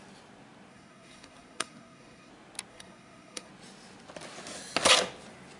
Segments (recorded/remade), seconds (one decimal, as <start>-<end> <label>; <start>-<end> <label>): 0.0-0.7 recorded; 0.7-2.3 remade; 2.3-2.7 recorded; 2.7-3.5 remade; 3.5-5.6 recorded